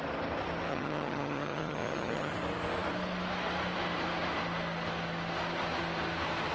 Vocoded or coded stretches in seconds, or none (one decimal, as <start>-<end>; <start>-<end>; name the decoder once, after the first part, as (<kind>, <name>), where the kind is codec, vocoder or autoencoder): 0.7-2.3 (vocoder, HiFi-GAN)